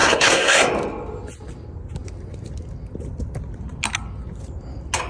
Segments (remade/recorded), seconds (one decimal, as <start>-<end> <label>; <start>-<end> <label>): 0.0-0.7 remade; 0.7-5.1 recorded